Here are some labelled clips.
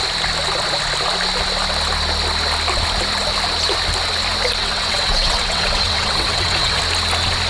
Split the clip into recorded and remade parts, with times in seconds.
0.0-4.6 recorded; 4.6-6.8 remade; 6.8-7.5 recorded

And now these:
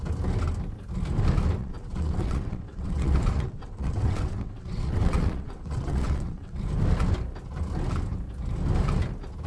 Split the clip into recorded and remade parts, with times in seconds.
0.0-1.6 recorded; 1.6-6.6 remade; 6.6-9.5 recorded

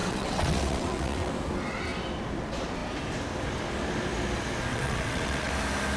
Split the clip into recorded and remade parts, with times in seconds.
0.0-1.3 remade; 1.3-4.7 recorded; 4.7-5.5 remade; 5.5-6.0 recorded

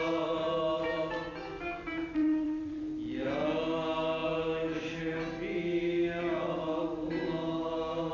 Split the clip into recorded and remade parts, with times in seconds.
0.0-2.2 recorded; 2.2-2.8 remade; 2.8-8.1 recorded

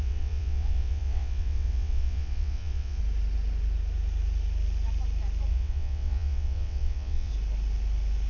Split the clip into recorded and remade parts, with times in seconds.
0.0-3.0 remade; 3.0-5.5 recorded; 5.5-7.3 remade; 7.3-8.3 recorded

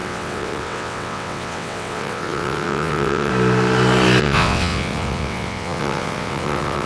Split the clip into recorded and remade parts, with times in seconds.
0.0-3.3 remade; 3.3-4.2 recorded; 4.2-6.9 remade

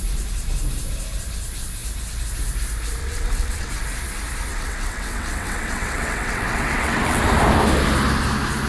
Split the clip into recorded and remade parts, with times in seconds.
0.0-3.0 recorded; 3.0-3.7 remade; 3.7-4.5 recorded; 4.5-7.2 remade; 7.2-8.7 recorded